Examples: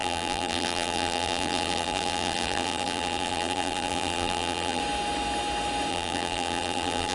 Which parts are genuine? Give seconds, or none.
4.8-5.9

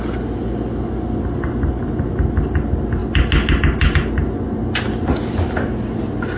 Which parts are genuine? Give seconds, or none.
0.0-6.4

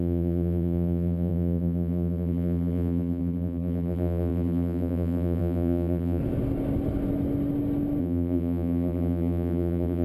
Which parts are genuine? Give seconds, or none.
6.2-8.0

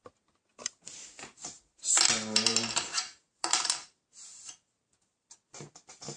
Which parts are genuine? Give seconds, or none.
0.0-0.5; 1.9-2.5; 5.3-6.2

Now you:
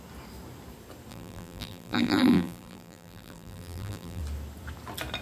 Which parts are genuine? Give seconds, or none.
0.0-1.1; 4.2-5.2

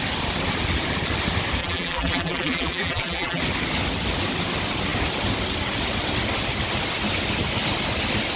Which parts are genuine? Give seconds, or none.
0.0-1.6; 3.4-8.4